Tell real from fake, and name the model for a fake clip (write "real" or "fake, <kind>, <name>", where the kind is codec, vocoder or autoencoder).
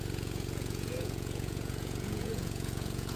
fake, vocoder, Vocos